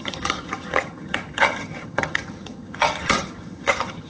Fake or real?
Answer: fake